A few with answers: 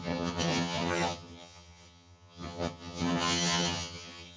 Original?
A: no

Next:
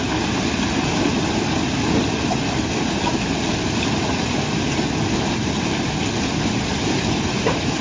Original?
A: yes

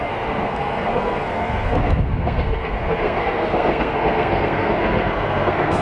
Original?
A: no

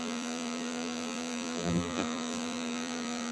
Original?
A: no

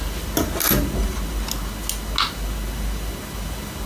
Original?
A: yes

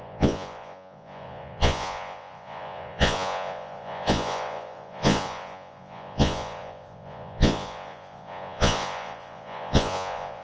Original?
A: no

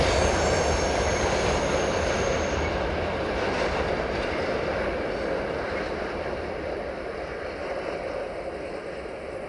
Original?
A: yes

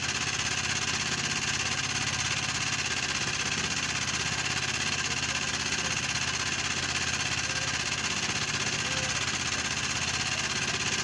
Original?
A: yes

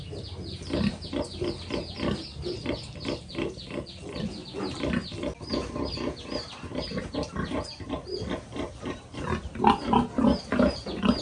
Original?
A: yes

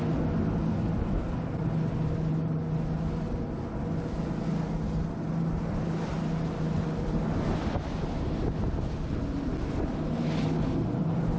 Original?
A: yes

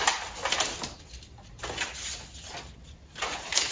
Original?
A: yes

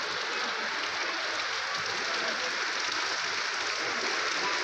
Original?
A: yes